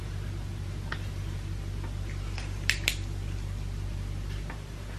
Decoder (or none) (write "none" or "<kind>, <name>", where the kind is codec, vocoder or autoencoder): none